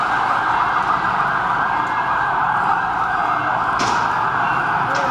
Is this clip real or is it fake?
real